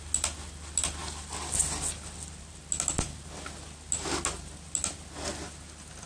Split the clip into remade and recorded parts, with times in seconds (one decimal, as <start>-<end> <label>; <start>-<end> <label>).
0.0-6.1 recorded